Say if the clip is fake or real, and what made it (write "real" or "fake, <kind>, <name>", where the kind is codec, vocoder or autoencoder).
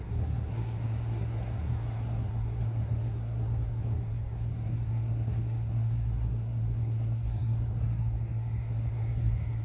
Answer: fake, codec, SNAC